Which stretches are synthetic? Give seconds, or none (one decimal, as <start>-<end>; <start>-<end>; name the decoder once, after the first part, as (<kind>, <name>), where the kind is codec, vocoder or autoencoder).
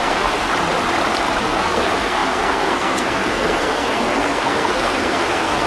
0.0-0.5 (codec, SNAC); 1.4-5.7